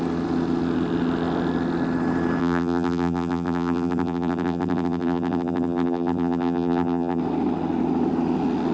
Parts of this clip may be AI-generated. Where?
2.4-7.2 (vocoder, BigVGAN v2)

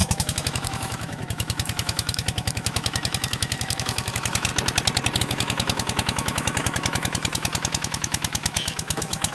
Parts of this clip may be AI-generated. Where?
0.0-4.5 (autoencoder, DAC-VAE); 5.2-9.3

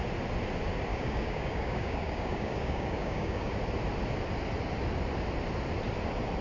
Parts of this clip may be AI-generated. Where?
0.9-3.5 (codec, DAC)